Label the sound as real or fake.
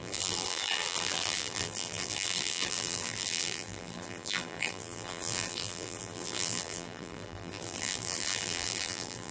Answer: fake